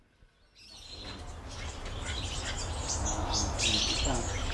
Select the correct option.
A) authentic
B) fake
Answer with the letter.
A